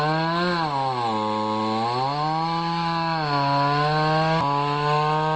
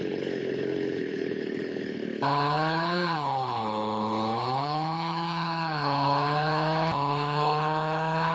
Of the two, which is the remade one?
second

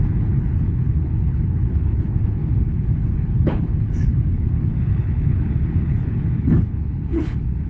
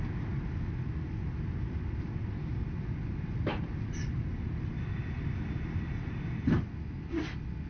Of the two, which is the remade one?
first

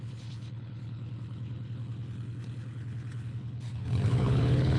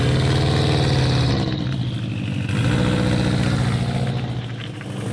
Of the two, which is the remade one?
first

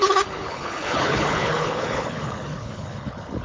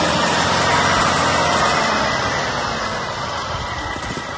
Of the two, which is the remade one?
first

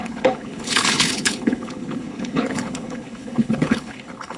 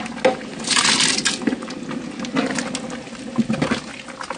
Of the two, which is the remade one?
first